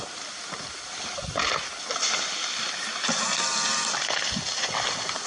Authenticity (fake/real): real